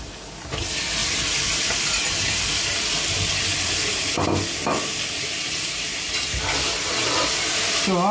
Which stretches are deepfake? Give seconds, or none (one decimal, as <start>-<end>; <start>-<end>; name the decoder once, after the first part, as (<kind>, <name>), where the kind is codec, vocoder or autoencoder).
1.0-3.7 (vocoder, BigVGAN v2)